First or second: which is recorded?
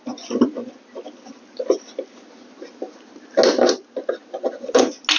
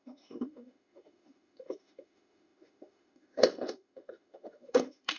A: first